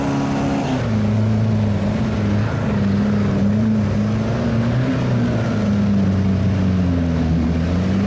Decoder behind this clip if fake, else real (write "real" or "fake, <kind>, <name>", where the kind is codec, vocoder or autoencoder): real